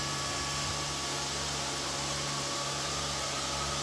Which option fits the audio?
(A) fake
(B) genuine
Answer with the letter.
B